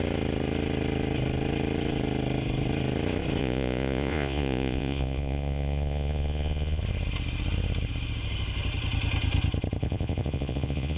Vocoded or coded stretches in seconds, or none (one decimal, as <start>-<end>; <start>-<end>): 3.4-6.8; 9.8-11.0